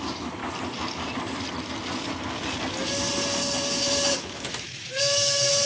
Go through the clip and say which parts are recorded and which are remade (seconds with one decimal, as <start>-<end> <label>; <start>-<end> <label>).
0.0-0.4 remade; 0.4-3.8 recorded; 3.8-5.7 remade